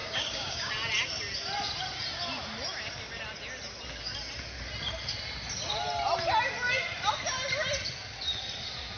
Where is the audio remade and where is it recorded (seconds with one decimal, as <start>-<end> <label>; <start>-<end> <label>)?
0.0-0.7 remade; 0.7-9.0 recorded